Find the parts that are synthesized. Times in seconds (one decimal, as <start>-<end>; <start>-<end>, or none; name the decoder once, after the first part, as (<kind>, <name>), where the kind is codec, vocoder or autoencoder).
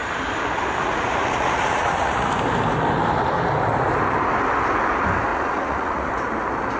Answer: 0.8-2.3 (vocoder, Vocos); 5.3-6.1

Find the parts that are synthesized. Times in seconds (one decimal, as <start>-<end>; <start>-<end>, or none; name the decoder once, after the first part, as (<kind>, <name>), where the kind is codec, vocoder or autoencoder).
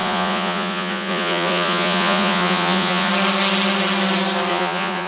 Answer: 0.0-3.1 (vocoder, Vocos); 4.5-5.1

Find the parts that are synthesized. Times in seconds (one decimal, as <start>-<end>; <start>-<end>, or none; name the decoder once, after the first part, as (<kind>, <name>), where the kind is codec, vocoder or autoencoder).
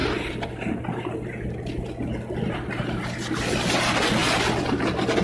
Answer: none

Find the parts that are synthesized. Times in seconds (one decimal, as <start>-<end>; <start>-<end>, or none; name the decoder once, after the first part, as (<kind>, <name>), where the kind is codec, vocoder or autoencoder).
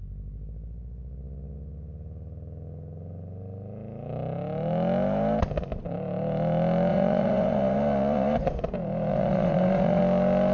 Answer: 6.9-8.6 (vocoder, Vocos); 9.1-10.0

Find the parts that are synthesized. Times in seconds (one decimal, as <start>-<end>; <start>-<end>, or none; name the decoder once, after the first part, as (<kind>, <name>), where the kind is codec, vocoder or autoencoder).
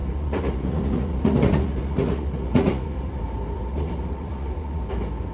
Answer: 0.0-3.2 (vocoder, Vocos); 3.7-4.8